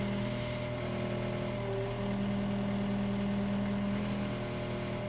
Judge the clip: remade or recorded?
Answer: recorded